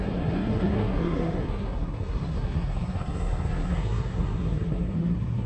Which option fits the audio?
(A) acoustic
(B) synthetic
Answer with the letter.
B